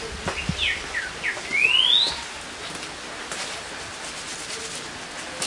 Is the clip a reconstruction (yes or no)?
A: no